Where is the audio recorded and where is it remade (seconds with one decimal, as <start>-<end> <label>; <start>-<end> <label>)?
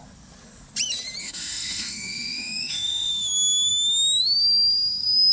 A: 0.0-1.2 recorded; 1.2-3.1 remade; 3.1-5.3 recorded